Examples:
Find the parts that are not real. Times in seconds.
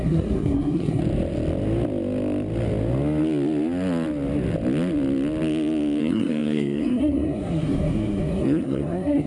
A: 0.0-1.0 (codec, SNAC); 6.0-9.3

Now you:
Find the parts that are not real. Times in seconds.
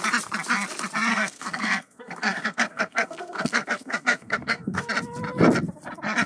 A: 1.1-4.9 (codec, SNAC)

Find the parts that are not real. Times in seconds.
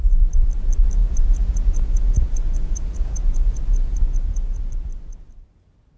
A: 1.0-4.6 (vocoder, Vocos)